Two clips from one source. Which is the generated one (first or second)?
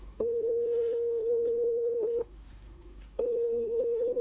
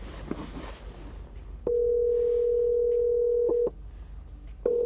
first